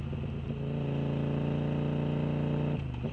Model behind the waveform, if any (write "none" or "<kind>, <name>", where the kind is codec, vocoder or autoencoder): none